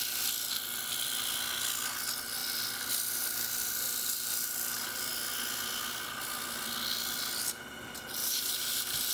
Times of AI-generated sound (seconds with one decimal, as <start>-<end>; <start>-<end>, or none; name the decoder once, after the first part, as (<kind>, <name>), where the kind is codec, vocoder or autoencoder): 8.2-9.1 (vocoder, BigVGAN v2)